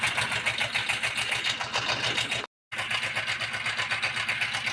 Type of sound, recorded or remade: recorded